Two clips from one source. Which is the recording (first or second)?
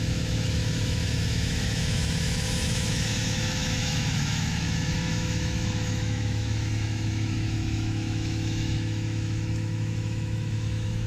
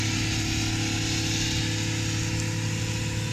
second